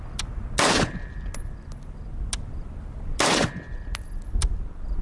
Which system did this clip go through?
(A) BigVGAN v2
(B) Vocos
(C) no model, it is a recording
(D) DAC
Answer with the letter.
C